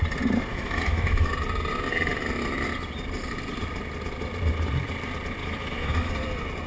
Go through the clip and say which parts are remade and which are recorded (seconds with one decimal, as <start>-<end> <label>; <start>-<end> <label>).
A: 0.0-0.5 recorded; 0.5-1.3 remade; 1.3-5.4 recorded; 5.4-6.1 remade; 6.1-6.7 recorded